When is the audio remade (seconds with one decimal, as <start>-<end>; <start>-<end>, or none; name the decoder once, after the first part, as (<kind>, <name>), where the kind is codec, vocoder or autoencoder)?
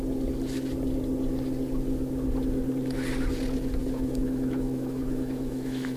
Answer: 3.8-6.0 (autoencoder, DAC-VAE)